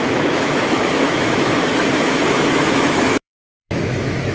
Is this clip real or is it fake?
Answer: fake